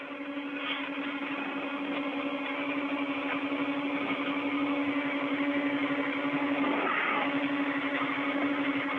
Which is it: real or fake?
real